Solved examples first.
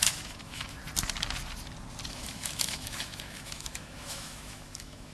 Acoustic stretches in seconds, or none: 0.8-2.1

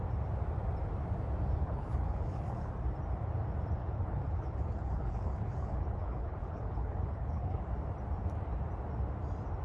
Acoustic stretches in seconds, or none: 0.0-1.6; 2.7-3.8; 7.6-9.6

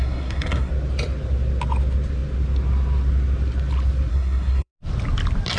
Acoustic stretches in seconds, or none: 0.7-4.1; 4.7-5.6

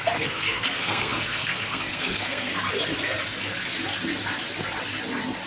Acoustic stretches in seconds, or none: 2.5-5.5

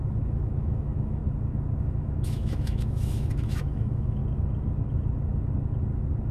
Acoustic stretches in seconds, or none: 1.2-1.8; 4.2-6.3